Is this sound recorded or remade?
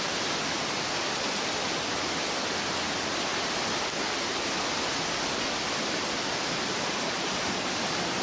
recorded